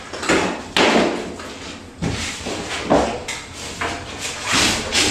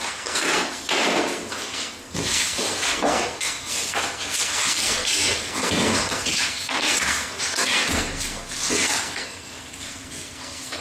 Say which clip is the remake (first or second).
second